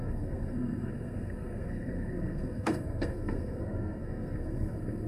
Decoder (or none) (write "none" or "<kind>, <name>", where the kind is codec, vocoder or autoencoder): codec, SNAC